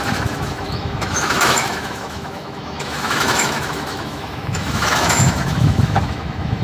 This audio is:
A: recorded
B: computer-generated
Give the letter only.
B